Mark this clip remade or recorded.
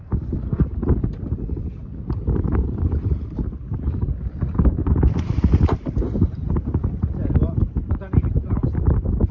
recorded